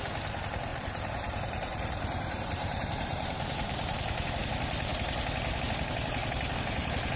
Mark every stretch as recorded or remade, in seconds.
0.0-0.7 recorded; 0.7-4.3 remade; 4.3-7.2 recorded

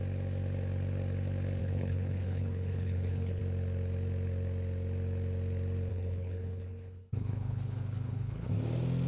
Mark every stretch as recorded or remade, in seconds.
0.0-1.6 recorded; 1.6-3.4 remade; 3.4-5.9 recorded; 5.9-8.5 remade; 8.5-9.1 recorded